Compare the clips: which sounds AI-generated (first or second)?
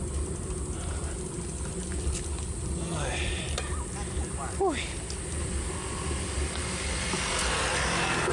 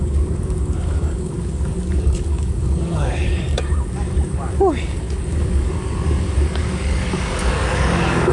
second